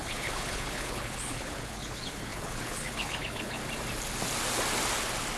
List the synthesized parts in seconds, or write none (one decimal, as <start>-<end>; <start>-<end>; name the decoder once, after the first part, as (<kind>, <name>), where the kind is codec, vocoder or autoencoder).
0.0-3.6 (codec, HILCodec)